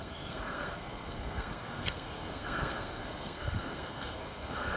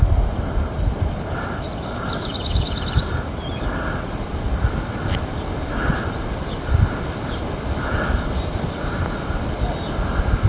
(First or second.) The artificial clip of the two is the first